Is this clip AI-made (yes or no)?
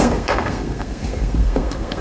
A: yes